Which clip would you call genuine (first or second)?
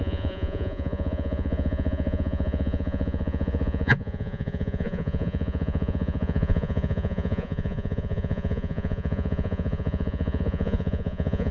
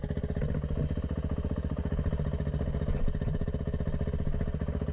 second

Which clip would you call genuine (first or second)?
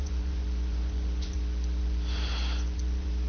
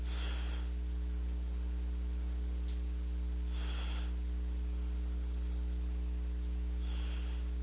second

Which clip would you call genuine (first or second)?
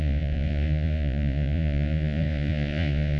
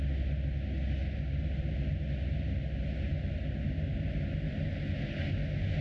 second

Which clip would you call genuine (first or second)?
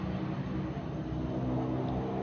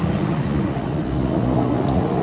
first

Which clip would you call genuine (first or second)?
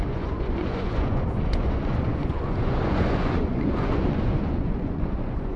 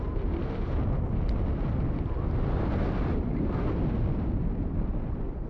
second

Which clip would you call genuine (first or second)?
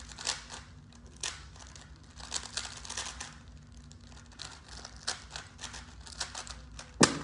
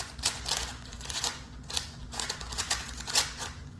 first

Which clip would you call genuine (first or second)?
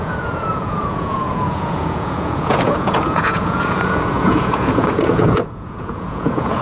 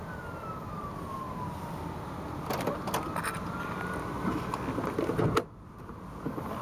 second